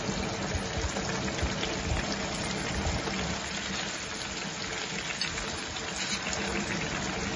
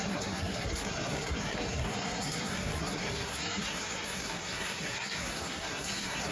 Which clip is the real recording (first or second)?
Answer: first